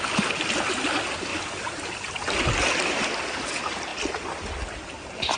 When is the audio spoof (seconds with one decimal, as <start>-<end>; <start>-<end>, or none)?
none